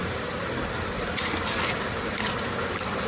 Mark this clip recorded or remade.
recorded